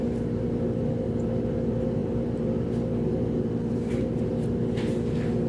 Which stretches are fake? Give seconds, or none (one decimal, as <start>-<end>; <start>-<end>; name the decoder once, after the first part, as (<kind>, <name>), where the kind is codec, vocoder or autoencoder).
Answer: none